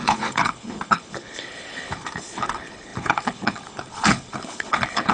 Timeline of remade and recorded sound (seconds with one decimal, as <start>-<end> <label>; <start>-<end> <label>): 0.0-5.1 remade